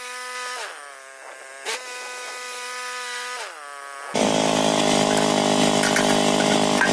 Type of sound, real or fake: real